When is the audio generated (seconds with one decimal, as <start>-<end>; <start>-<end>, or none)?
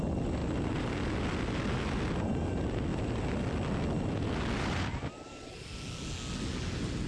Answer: none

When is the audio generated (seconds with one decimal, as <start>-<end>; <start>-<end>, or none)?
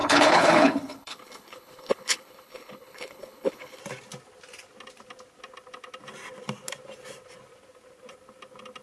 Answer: 0.0-3.8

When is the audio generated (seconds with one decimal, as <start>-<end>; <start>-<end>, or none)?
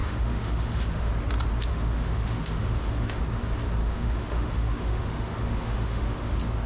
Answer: 0.0-1.1; 1.7-3.2; 3.8-6.3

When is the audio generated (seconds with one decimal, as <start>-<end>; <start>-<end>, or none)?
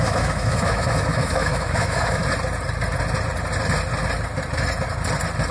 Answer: 0.0-2.2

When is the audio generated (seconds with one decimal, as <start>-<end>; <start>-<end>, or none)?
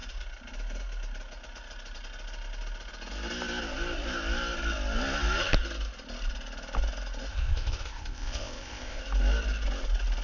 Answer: 7.3-9.0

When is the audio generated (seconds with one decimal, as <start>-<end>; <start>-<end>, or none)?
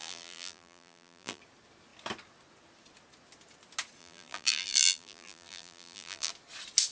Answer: 0.0-1.4; 4.0-6.3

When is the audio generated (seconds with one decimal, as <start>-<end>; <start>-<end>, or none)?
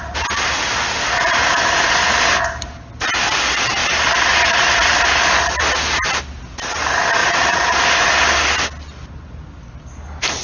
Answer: 7.2-7.8